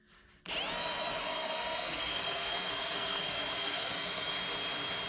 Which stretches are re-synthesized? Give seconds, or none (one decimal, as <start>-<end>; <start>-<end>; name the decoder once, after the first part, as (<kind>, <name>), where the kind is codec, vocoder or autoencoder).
1.2-4.3 (codec, SNAC)